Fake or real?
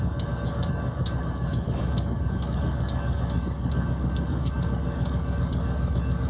fake